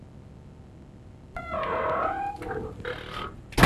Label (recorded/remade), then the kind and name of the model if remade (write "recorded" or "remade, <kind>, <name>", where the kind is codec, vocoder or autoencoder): recorded